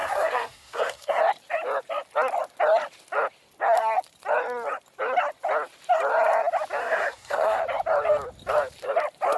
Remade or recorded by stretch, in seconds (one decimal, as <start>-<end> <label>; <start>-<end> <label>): 0.0-1.2 remade; 1.2-6.8 recorded; 6.8-7.6 remade; 7.6-9.4 recorded